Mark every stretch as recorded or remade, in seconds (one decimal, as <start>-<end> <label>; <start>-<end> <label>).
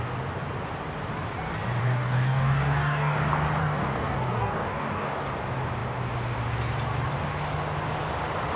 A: 0.0-1.8 recorded; 1.8-3.2 remade; 3.2-3.6 recorded; 3.6-5.3 remade; 5.3-8.6 recorded